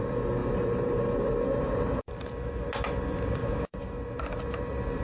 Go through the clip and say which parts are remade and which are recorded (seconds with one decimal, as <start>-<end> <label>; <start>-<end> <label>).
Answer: 0.0-0.4 recorded; 0.4-2.0 remade; 2.0-3.4 recorded; 3.4-5.0 remade